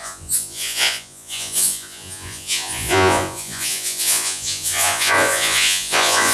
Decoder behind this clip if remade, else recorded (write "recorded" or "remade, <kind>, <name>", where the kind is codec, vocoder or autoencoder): remade, vocoder, Vocos